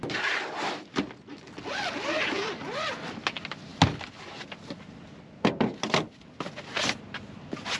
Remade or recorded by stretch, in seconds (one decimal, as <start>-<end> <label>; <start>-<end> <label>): 0.0-7.8 recorded